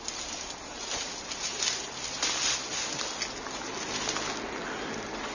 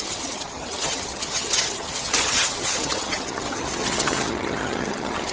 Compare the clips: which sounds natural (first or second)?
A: first